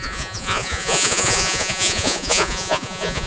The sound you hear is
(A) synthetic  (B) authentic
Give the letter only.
A